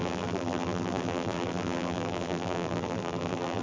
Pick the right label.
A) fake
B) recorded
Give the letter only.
A